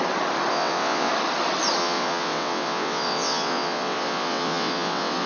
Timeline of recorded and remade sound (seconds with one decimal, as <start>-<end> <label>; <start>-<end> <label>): 0.0-0.5 recorded; 0.5-1.1 remade; 1.1-1.8 recorded; 1.8-5.3 remade